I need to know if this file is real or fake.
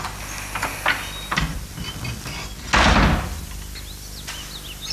real